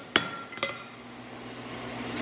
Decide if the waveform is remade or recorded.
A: recorded